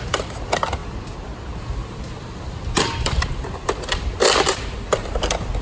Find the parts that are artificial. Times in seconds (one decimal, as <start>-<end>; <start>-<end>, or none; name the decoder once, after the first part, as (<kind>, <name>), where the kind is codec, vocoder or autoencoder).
none